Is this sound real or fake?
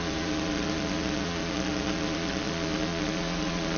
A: fake